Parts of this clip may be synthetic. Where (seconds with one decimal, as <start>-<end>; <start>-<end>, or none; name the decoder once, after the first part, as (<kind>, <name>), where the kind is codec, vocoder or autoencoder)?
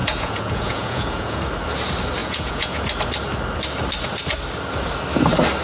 0.0-1.4 (vocoder, Vocos); 2.2-2.8